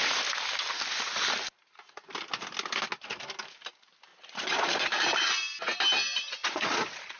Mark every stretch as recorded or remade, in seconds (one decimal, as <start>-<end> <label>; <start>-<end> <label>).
0.0-4.1 recorded; 4.1-4.9 remade; 4.9-6.4 recorded; 6.4-7.2 remade